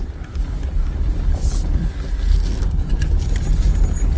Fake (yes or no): no